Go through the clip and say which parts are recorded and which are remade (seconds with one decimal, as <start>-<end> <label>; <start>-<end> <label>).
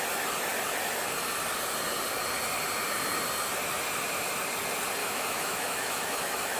0.0-5.0 recorded; 5.0-6.6 remade